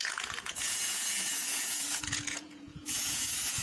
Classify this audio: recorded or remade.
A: remade